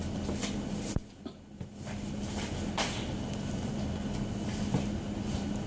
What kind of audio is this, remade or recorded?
recorded